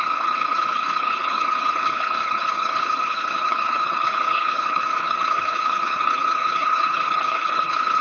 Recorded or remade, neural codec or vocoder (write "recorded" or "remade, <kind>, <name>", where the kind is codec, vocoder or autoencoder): remade, codec, HILCodec